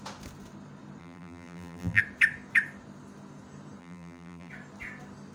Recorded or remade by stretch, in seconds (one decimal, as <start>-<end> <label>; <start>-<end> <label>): 0.0-1.0 recorded; 1.0-2.0 remade; 2.0-3.8 recorded; 3.8-4.5 remade; 4.5-5.3 recorded